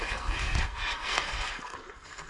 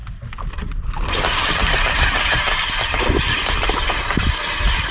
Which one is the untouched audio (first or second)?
second